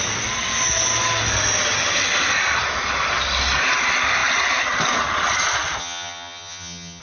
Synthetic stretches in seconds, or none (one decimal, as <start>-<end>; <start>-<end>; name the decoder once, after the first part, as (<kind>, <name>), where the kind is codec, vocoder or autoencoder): 5.8-7.0 (vocoder, HiFi-GAN)